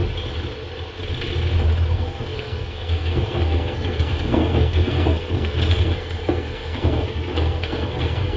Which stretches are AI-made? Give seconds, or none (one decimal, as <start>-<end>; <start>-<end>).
1.9-8.4